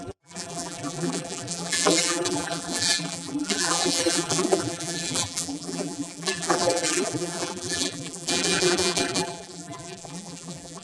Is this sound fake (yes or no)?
yes